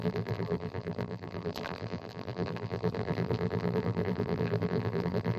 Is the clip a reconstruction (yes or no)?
yes